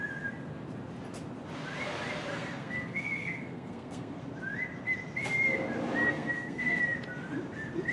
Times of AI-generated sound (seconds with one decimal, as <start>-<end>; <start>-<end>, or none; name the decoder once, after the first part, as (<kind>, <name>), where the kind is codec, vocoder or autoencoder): 2.3-4.2 (codec, SNAC); 6.0-6.8